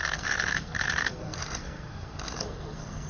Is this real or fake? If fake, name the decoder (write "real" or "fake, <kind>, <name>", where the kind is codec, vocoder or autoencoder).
fake, codec, SNAC